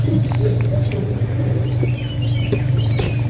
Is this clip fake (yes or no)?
yes